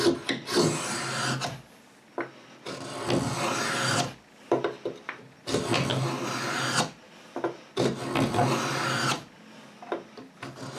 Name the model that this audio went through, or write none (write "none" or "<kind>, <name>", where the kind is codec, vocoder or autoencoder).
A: none